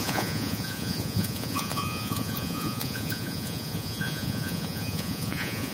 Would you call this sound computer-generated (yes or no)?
yes